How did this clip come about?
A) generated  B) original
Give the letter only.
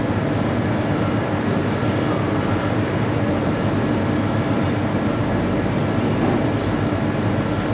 B